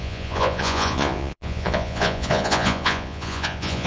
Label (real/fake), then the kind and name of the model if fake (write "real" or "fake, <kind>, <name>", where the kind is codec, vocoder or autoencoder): fake, vocoder, Vocos